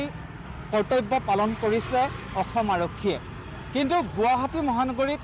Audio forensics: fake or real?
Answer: real